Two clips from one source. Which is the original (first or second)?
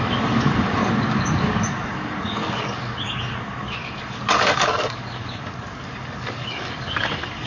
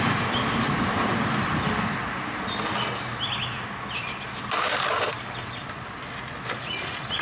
second